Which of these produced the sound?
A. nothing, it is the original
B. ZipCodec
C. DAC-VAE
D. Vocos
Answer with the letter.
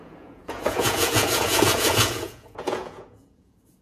D